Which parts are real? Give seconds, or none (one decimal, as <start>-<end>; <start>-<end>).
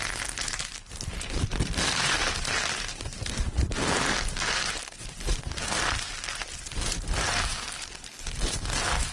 3.7-9.1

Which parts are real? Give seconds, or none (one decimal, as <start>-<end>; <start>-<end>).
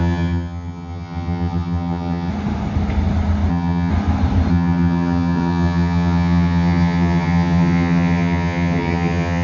2.3-3.5; 3.9-4.5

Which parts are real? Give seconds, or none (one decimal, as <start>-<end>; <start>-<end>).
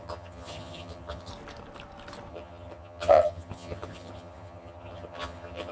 1.3-2.3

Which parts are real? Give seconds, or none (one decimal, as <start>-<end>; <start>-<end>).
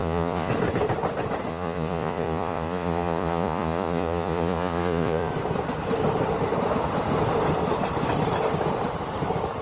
0.5-1.5; 5.3-9.6